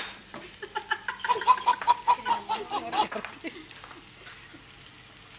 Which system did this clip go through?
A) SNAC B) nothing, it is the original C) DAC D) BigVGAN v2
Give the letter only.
B